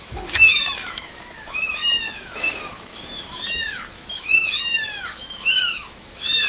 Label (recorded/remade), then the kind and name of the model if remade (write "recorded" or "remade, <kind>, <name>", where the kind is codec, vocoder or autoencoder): remade, autoencoder, DAC-VAE